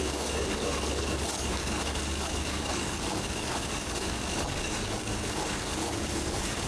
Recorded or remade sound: remade